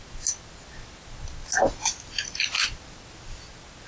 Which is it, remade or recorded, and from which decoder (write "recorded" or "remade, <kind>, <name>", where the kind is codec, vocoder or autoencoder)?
recorded